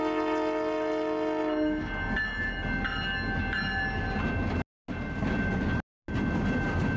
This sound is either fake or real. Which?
real